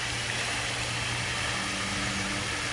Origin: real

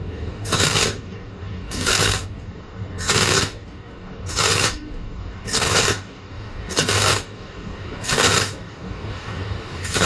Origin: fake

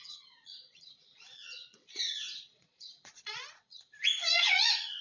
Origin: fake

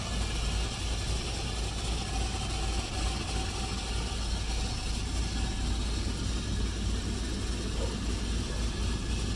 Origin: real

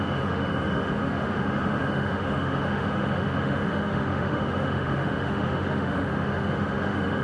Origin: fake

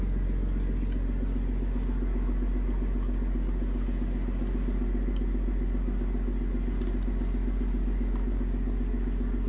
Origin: real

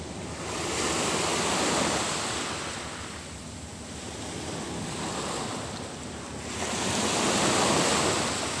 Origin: real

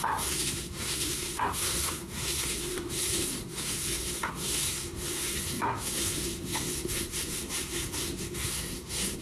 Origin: fake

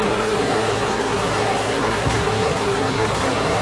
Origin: fake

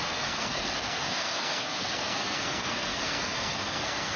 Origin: fake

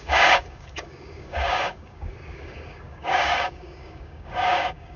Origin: fake